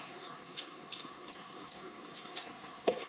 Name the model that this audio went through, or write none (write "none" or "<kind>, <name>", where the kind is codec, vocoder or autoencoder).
codec, SNAC